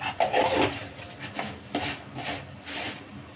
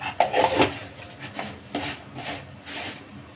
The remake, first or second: first